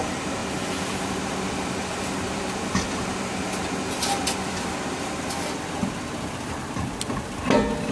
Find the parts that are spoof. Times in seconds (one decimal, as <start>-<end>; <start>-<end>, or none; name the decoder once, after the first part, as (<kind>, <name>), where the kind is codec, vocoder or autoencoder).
none